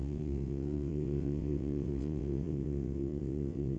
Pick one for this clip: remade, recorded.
remade